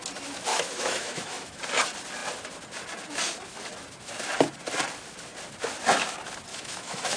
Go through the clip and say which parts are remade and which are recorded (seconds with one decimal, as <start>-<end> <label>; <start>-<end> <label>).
0.0-0.5 recorded; 0.5-1.6 remade; 1.6-6.5 recorded; 6.5-7.2 remade